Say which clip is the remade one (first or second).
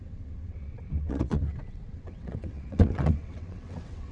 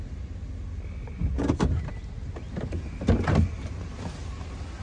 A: first